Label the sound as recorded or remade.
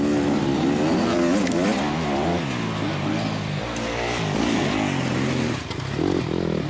recorded